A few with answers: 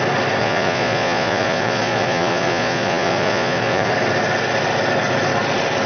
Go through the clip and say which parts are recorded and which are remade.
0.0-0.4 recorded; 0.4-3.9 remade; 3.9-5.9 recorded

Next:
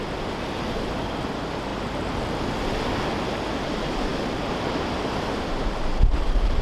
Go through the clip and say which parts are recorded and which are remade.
0.0-6.6 recorded

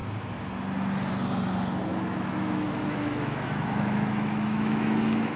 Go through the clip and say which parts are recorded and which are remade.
0.0-1.9 recorded; 1.9-5.4 remade

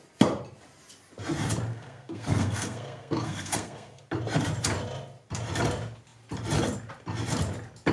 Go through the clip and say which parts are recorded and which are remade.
0.0-1.7 recorded; 1.7-4.0 remade; 4.0-7.9 recorded

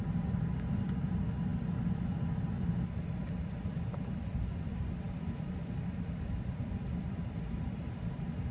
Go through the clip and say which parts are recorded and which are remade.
0.0-8.5 recorded

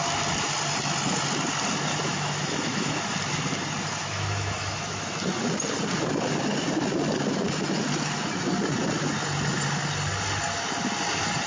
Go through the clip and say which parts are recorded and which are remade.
0.0-1.9 recorded; 1.9-3.1 remade; 3.1-4.0 recorded; 4.0-5.3 remade; 5.3-11.5 recorded

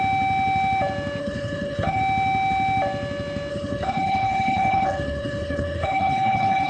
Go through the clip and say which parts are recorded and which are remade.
0.0-1.2 recorded; 1.2-2.0 remade; 2.0-3.5 recorded; 3.5-6.7 remade

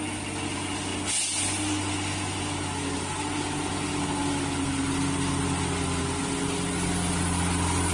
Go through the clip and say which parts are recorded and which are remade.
0.0-7.9 recorded